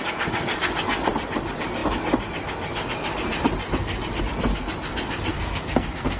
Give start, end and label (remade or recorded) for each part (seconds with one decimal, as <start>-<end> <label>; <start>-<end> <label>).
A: 0.0-5.3 recorded; 5.3-6.2 remade